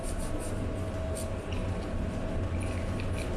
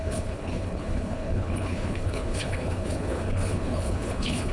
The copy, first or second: second